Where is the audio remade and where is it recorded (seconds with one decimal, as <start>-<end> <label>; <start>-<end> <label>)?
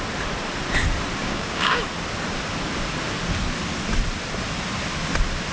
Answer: 0.0-1.2 recorded; 1.2-1.8 remade; 1.8-5.5 recorded